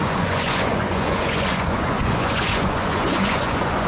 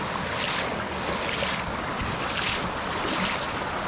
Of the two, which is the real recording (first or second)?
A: second